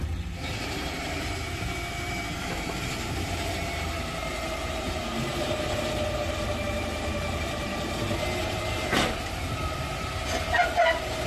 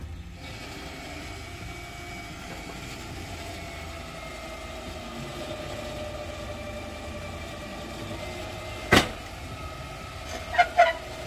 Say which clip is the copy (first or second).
first